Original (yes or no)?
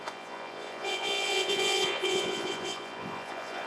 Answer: no